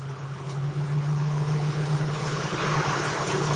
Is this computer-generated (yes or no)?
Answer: yes